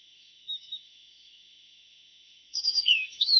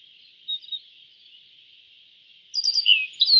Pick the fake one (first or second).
first